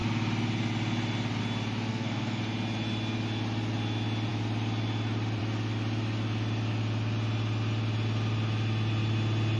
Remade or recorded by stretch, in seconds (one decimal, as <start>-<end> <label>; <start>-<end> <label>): 0.0-1.9 recorded; 1.9-2.4 remade; 2.4-9.6 recorded